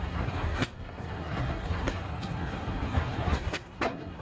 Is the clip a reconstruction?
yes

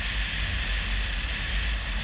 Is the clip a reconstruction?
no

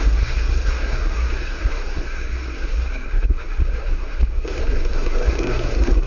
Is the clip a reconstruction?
yes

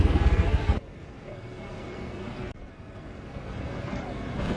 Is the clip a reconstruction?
yes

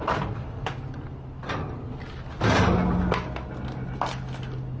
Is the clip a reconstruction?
no